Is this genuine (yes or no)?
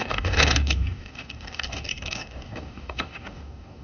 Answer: no